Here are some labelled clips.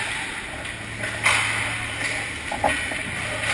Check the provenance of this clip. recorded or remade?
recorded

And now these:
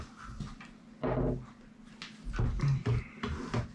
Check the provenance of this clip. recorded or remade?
recorded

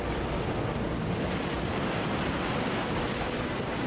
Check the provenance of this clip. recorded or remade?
recorded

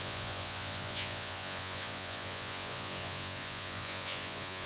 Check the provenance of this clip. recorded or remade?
remade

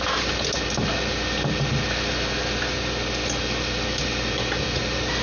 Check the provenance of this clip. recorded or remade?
recorded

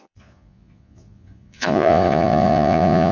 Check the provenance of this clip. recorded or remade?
remade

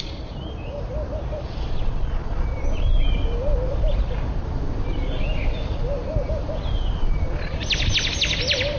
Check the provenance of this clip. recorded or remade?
recorded